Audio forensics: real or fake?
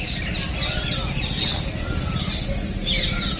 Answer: real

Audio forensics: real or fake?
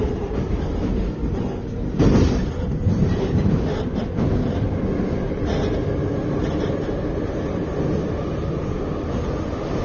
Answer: real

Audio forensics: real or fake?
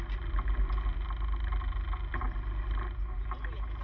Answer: real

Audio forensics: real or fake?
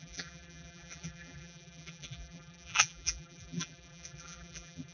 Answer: fake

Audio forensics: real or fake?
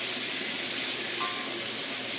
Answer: real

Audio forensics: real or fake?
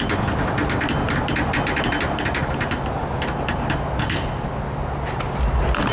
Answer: real